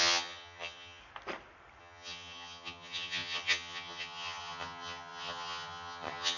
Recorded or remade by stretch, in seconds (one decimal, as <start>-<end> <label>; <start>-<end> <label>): 0.0-1.0 remade; 1.0-1.8 recorded; 1.8-6.4 remade